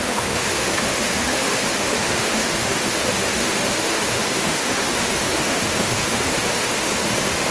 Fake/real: fake